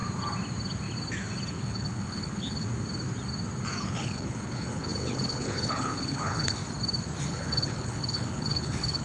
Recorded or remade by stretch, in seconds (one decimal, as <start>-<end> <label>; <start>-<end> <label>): 0.0-1.5 recorded; 1.5-2.7 remade; 2.7-3.8 recorded; 3.8-6.6 remade; 6.6-7.2 recorded; 7.2-9.0 remade